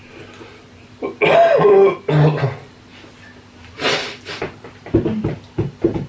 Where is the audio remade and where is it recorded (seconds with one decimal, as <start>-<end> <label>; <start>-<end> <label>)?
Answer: 0.0-6.1 recorded